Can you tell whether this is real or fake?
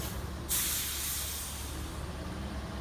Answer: real